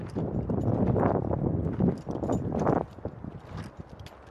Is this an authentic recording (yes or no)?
yes